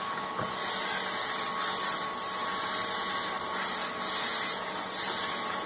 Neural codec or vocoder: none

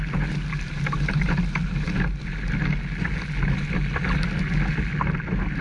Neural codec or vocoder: none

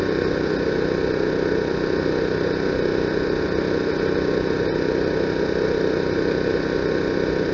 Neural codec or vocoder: none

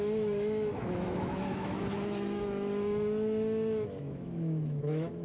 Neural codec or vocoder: autoencoder, DAC-VAE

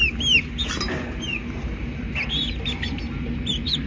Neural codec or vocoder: none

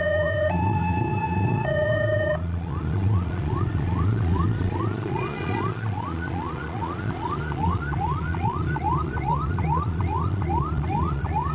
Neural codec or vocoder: vocoder, Vocos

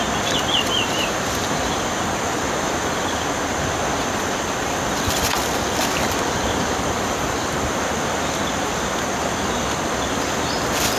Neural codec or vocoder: none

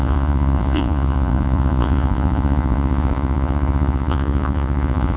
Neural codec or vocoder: vocoder, Vocos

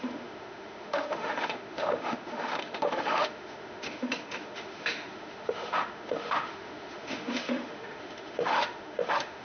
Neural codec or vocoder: autoencoder, DAC-VAE